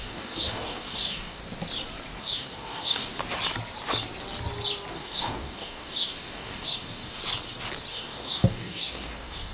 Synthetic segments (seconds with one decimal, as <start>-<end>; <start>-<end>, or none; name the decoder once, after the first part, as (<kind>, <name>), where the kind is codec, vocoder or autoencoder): 0.0-1.4 (codec, DAC); 2.2-3.1; 4.9-7.2; 7.9-9.5